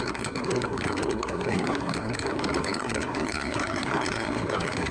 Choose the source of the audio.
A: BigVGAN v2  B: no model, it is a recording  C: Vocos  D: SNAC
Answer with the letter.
D